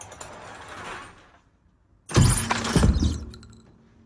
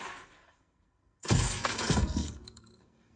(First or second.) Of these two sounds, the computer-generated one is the second